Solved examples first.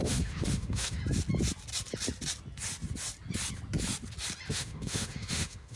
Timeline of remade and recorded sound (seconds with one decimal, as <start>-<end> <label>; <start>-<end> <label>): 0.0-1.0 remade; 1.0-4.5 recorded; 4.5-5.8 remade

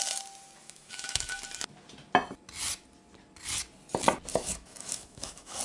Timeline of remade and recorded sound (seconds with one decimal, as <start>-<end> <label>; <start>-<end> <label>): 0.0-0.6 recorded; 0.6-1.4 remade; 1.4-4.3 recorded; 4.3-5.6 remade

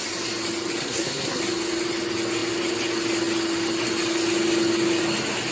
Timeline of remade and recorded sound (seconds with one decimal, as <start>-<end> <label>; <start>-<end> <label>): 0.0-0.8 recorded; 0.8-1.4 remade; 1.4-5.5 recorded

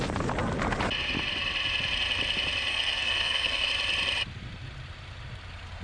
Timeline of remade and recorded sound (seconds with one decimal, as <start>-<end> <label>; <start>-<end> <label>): 0.0-2.7 recorded; 2.7-3.7 remade; 3.7-5.8 recorded